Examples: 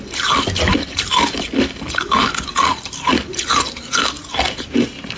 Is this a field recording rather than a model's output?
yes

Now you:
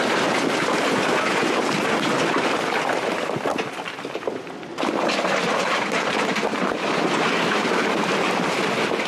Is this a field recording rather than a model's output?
no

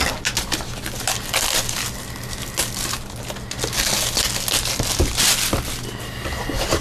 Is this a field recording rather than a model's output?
yes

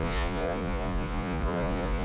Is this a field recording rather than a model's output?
no